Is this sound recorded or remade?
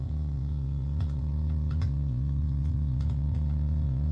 remade